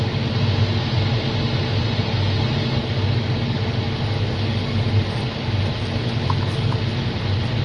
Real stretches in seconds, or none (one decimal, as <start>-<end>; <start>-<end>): 0.0-4.7; 5.6-7.6